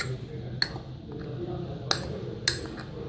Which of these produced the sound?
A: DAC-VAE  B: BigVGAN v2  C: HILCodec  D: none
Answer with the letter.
D